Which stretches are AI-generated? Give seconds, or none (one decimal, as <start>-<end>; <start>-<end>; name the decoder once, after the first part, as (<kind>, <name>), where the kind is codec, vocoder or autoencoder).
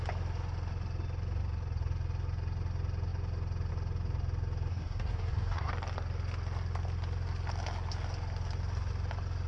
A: 4.7-5.7 (codec, SNAC)